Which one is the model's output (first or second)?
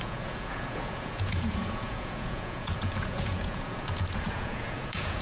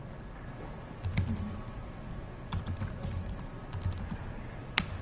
first